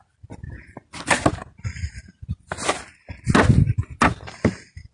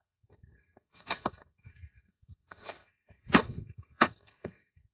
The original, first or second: first